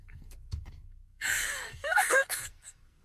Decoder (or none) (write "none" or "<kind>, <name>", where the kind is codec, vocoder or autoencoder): codec, SNAC